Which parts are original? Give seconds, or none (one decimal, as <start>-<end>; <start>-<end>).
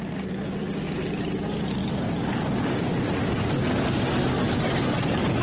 0.0-5.4